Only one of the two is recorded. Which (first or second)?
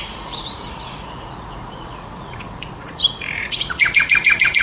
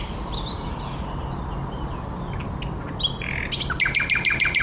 second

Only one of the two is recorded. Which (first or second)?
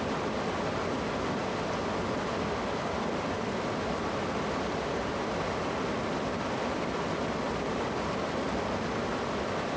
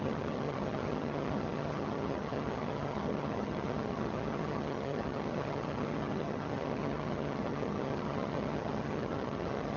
first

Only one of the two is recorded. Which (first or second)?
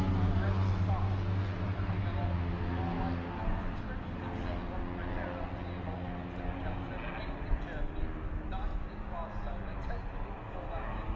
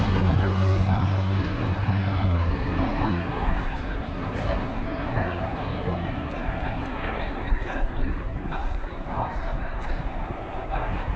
first